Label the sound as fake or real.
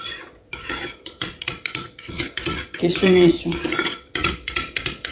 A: fake